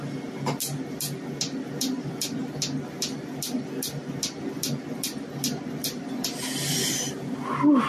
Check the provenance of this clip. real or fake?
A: real